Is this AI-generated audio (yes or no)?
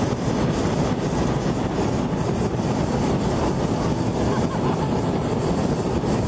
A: no